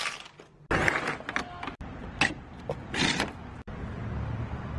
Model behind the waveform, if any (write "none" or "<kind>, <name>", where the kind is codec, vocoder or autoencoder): none